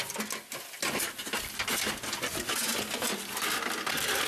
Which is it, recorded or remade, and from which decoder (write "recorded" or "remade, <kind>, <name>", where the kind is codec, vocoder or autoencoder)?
recorded